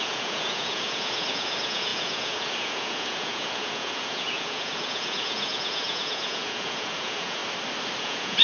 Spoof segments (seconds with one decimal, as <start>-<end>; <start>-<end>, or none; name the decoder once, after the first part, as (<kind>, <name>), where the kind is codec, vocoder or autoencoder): 0.0-7.4 (vocoder, Vocos); 8.0-8.4